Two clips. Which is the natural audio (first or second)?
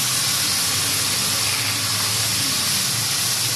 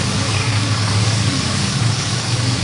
first